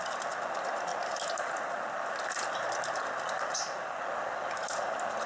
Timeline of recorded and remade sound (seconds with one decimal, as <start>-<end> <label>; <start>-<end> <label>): 0.0-5.3 recorded